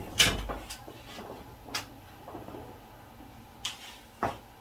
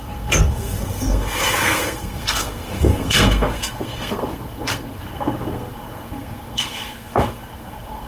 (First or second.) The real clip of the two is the first